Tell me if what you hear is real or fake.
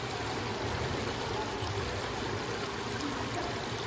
fake